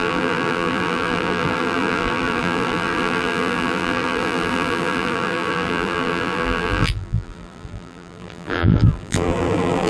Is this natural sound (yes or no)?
no